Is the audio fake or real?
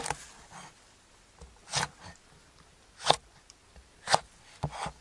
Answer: real